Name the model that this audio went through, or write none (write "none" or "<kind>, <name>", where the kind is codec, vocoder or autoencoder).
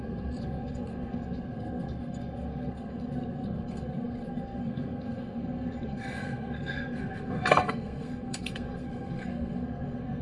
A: codec, SNAC